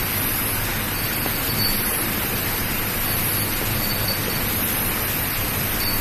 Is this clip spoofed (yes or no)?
yes